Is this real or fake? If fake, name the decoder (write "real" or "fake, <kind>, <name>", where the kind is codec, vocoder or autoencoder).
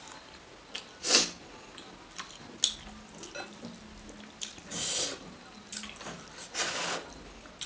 real